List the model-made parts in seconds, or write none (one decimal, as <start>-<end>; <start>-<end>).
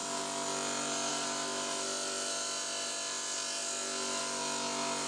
none